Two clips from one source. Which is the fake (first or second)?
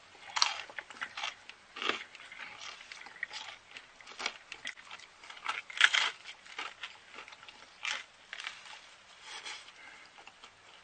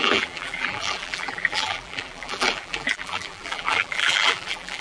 second